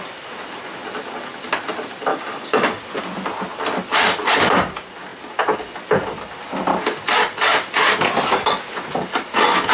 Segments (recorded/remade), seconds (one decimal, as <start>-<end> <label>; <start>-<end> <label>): 0.0-2.1 recorded; 2.1-2.8 remade; 2.8-9.7 recorded